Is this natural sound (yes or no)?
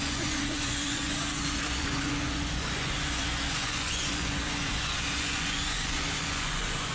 no